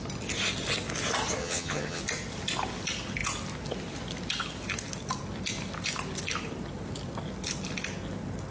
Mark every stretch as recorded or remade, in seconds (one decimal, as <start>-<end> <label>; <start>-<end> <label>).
0.0-1.4 recorded; 1.4-2.0 remade; 2.0-8.5 recorded